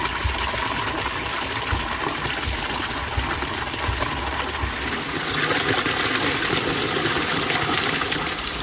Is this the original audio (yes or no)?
yes